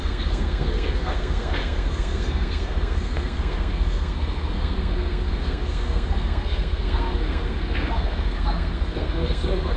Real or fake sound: fake